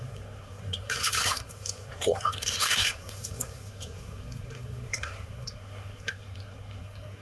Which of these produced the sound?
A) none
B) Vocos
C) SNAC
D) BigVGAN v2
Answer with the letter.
C